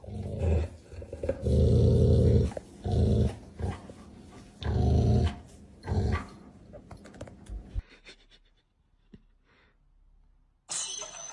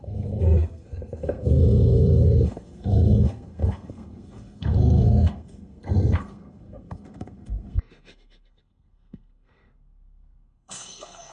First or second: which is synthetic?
second